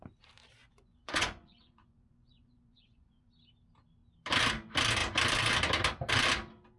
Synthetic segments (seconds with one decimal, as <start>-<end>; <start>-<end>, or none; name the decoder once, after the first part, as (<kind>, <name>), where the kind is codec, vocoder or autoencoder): 0.6-3.3 (vocoder, Vocos)